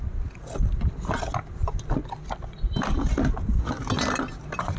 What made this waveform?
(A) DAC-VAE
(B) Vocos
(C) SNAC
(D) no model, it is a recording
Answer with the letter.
D